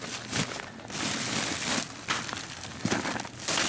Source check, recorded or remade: recorded